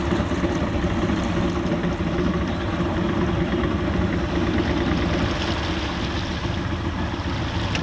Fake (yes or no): no